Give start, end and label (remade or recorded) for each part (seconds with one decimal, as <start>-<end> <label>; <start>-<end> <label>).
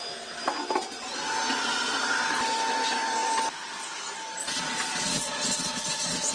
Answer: 0.0-4.4 recorded; 4.4-6.3 remade